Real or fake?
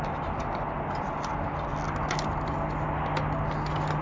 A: real